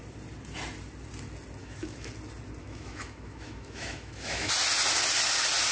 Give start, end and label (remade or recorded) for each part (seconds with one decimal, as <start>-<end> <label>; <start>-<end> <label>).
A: 0.0-1.6 recorded; 1.6-2.1 remade; 2.1-2.6 recorded; 2.6-4.5 remade; 4.5-5.7 recorded